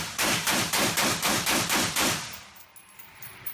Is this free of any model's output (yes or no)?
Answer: no